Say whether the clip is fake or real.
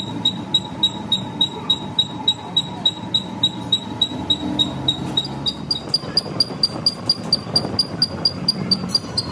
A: real